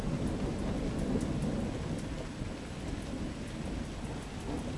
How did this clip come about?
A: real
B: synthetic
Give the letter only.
A